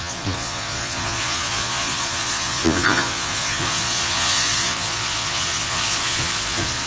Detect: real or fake fake